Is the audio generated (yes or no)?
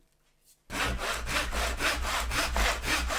no